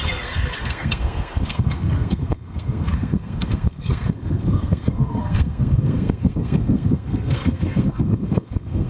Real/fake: fake